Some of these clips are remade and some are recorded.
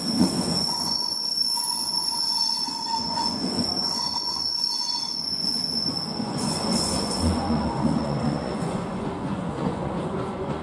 remade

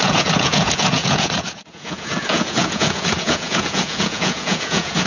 remade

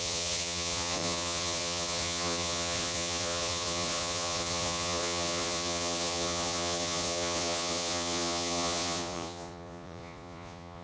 remade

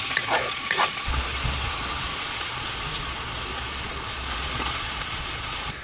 remade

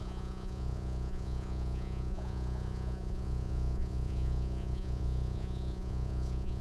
remade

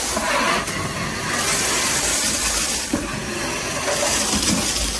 recorded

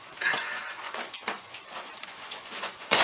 remade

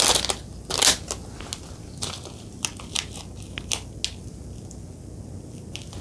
recorded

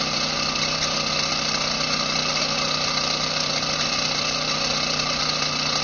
recorded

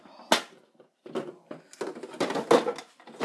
recorded